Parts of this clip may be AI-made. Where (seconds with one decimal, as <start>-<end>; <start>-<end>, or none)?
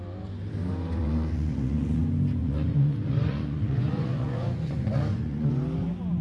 1.0-2.0; 2.4-5.5